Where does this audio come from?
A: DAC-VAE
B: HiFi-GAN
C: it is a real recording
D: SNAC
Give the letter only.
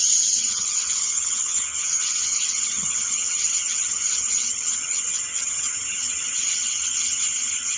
B